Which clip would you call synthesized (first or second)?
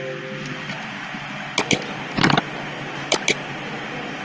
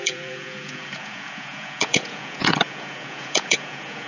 second